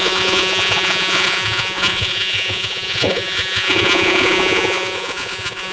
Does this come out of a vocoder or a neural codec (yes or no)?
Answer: yes